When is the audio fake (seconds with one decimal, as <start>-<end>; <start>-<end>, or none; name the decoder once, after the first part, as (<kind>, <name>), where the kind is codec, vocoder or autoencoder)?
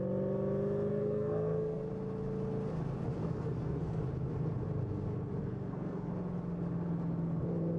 0.9-1.9 (codec, SNAC); 3.2-4.0; 5.4-6.1